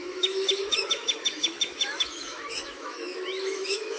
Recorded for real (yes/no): no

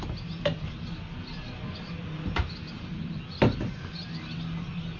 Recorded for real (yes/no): yes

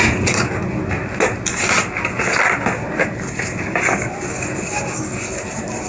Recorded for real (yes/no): yes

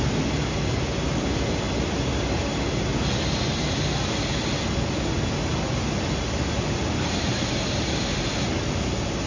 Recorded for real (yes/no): yes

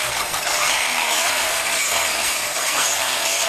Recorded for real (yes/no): no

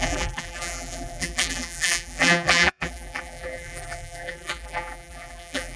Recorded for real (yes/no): no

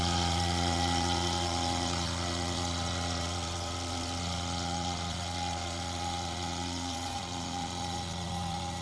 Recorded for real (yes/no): no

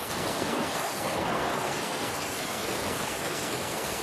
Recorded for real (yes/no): no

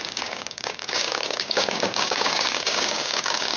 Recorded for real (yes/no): no